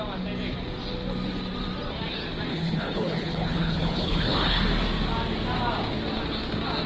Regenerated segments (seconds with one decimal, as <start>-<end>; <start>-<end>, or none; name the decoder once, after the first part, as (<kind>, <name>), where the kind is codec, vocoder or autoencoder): 2.5-4.6 (codec, HILCodec)